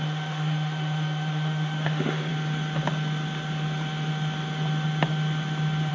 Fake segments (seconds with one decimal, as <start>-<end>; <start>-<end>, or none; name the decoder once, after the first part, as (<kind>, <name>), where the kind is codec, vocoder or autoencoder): 0.0-2.3 (autoencoder, DAC-VAE)